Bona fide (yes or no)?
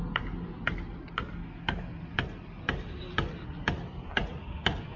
yes